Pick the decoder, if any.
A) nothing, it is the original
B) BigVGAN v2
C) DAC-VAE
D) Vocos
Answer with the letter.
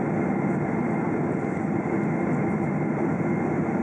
A